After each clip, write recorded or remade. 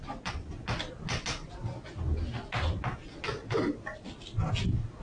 recorded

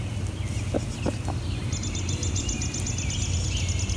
recorded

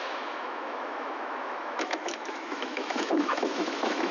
remade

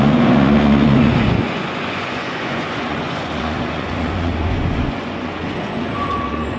remade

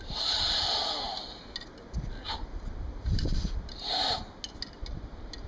recorded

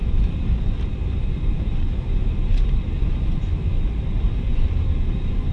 remade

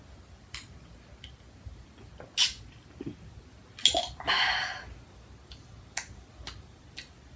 recorded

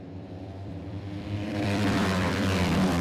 remade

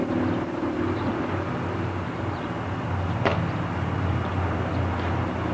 recorded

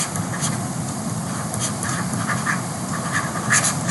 remade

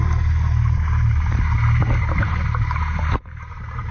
recorded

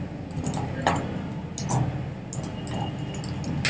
recorded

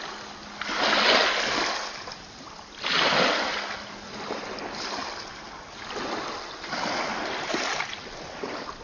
recorded